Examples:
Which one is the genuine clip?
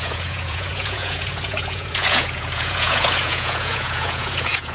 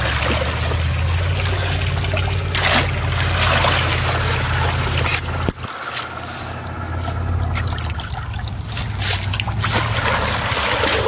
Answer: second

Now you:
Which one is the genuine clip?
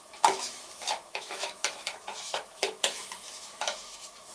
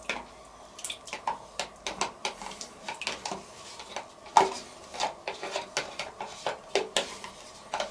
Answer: second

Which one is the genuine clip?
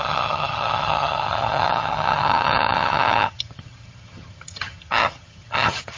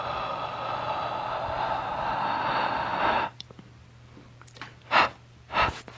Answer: second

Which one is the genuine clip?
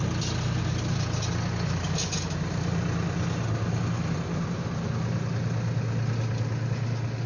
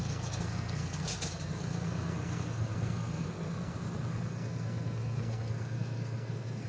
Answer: first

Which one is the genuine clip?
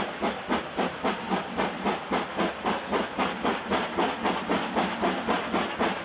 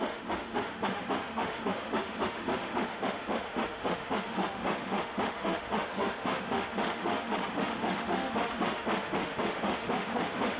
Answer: first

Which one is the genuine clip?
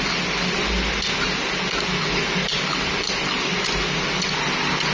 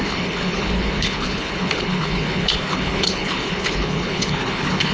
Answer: first